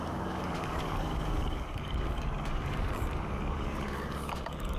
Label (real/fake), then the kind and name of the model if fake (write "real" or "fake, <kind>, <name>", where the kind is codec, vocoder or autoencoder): fake, codec, DAC